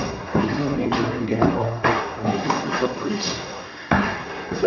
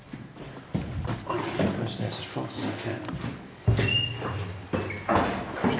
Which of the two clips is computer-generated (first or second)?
first